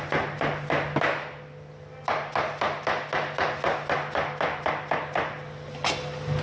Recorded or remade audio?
recorded